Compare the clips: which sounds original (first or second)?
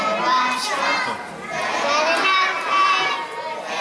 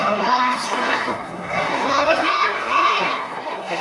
first